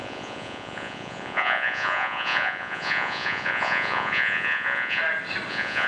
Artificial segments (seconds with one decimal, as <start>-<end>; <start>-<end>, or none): 0.0-5.0; 5.5-5.9